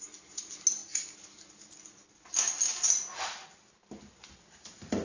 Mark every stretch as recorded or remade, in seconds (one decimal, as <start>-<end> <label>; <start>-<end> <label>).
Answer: 0.0-5.0 recorded